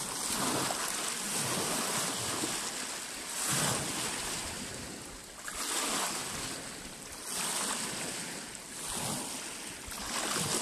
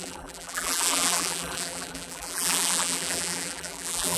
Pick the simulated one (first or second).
second